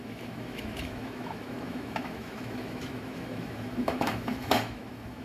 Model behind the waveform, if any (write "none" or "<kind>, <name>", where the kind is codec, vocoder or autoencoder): autoencoder, DAC-VAE